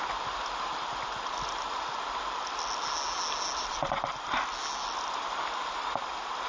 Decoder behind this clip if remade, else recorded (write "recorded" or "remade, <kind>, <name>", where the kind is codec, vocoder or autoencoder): recorded